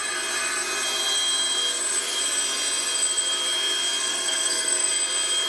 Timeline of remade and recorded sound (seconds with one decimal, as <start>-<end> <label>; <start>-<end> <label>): 0.0-4.1 recorded; 4.1-4.9 remade; 4.9-5.5 recorded